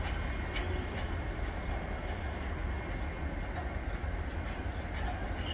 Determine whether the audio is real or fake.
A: real